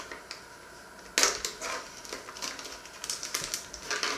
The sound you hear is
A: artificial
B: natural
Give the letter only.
B